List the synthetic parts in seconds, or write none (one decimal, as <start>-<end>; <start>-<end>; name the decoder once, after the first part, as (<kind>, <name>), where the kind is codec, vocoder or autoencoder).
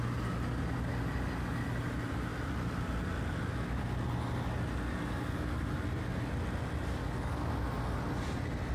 7.0-7.5 (codec, DAC)